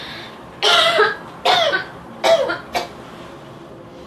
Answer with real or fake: real